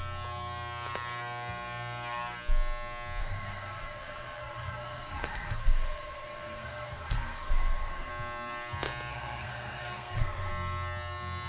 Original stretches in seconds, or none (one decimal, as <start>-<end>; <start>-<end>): 0.0-3.2; 8.1-9.1; 10.5-11.5